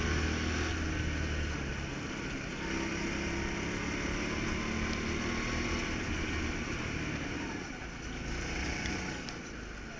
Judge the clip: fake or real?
real